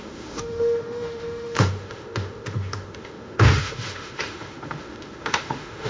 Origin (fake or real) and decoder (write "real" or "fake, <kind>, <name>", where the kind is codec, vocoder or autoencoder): fake, autoencoder, DAC-VAE